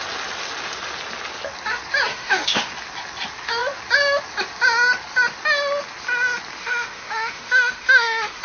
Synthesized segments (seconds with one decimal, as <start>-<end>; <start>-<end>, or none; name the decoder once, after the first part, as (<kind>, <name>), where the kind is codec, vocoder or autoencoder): 2.1-2.7 (autoencoder, DAC-VAE); 6.6-8.4